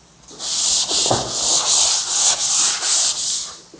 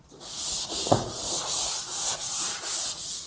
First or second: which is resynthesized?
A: second